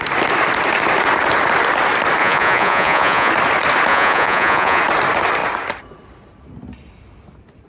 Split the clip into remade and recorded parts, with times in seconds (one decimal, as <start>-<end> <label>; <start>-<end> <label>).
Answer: 0.0-2.2 recorded; 2.2-3.3 remade; 3.3-3.9 recorded; 3.9-4.8 remade; 4.8-7.7 recorded